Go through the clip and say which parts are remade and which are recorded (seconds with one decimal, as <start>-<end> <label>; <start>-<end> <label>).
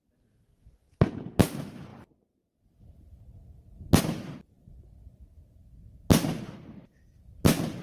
0.0-7.8 recorded